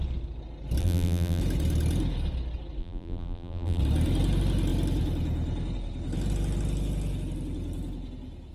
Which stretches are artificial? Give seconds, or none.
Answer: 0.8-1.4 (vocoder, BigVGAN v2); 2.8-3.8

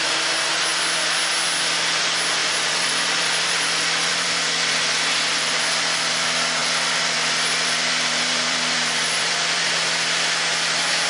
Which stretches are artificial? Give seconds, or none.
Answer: 2.4-5.5 (vocoder, BigVGAN v2); 6.6-9.7

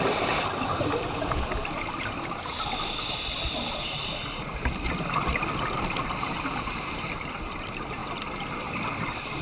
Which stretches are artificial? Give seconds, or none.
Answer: 0.0-8.0 (vocoder, BigVGAN v2); 8.9-9.4